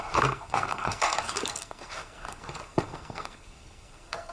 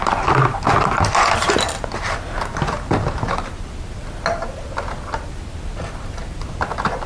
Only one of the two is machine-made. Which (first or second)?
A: first